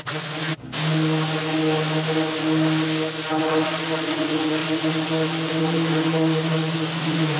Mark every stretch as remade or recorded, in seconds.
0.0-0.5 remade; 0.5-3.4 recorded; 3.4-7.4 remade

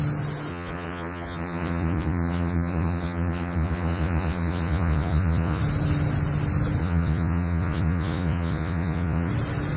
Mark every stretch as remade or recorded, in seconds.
0.0-0.5 recorded; 0.5-5.6 remade; 5.6-6.8 recorded; 6.8-9.3 remade; 9.3-9.8 recorded